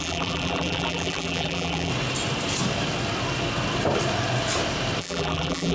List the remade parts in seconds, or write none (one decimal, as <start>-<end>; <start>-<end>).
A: 0.0-1.9; 5.0-5.7